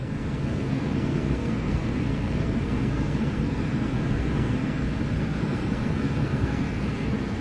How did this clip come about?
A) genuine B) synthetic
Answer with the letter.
B